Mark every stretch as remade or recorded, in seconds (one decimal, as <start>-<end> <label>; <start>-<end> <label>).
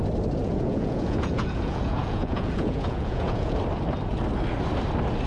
0.0-0.4 recorded; 0.4-3.6 remade; 3.6-5.3 recorded